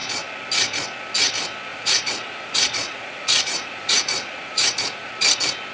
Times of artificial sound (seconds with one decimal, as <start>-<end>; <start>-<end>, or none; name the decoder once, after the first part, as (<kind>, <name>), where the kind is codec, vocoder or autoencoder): 1.7-5.1 (vocoder, Vocos)